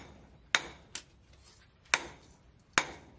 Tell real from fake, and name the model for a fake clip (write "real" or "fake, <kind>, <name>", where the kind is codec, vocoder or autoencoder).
real